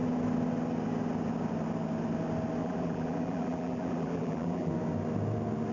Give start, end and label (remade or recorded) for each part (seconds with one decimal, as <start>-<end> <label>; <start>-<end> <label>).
0.0-2.6 recorded; 2.6-4.7 remade; 4.7-5.7 recorded